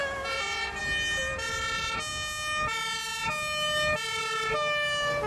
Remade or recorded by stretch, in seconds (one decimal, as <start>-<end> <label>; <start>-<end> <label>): 0.0-5.3 recorded